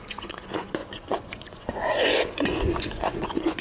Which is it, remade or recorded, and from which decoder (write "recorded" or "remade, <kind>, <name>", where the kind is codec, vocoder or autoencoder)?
remade, vocoder, Vocos